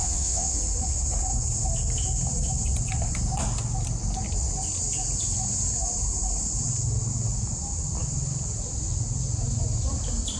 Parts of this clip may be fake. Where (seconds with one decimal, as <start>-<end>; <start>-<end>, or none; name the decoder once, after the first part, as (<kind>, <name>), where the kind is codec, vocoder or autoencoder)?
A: 0.0-0.6 (vocoder, WaveNeXt)

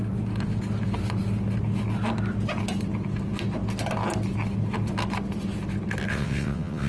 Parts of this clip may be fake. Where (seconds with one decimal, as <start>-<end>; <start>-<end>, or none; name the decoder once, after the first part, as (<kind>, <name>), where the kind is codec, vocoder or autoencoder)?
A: 6.1-6.9 (vocoder, WaveNeXt)

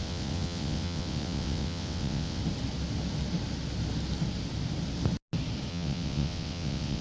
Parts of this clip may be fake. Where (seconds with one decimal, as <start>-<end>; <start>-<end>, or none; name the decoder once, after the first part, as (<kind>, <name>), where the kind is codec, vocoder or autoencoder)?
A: 0.0-2.4 (vocoder, WaveNeXt); 5.7-7.0

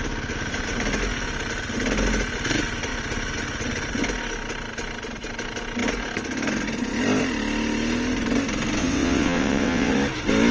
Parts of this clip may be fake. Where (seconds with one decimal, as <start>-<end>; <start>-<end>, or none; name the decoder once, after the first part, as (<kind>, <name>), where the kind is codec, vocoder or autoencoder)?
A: 8.8-9.9 (vocoder, WaveNeXt)

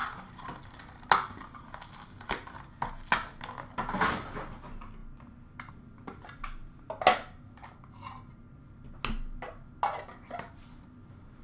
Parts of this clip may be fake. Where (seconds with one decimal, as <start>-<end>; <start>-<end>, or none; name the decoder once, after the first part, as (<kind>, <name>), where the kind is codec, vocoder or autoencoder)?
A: none

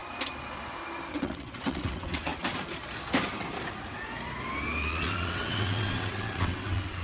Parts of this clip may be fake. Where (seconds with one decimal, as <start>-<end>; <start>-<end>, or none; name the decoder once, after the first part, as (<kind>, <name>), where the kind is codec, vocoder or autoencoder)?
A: 1.1-2.3 (vocoder, WaveNeXt); 4.8-7.0

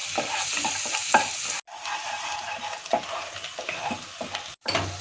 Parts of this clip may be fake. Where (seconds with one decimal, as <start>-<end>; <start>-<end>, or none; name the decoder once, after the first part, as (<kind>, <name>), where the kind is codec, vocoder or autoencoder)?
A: none

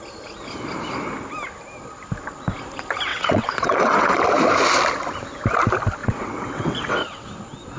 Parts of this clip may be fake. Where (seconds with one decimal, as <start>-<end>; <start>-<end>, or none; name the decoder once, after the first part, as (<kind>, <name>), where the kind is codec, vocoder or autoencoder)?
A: 3.1-4.1 (vocoder, WaveNeXt); 6.0-7.3